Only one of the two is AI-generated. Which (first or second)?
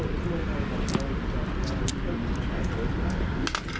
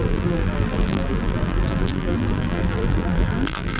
second